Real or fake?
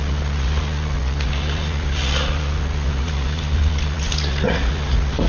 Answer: fake